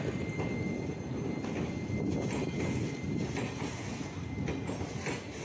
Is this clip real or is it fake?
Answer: real